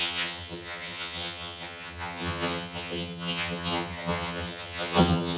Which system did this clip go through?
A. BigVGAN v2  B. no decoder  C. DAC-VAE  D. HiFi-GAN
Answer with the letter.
D